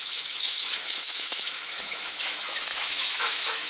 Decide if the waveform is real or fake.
fake